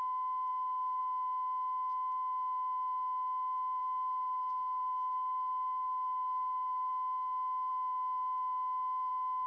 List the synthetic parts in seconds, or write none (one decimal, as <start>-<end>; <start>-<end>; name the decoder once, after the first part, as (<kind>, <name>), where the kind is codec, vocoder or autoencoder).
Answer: 0.5-1.0 (codec, DAC); 3.8-6.9